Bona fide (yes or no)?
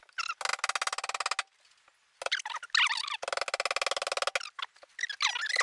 yes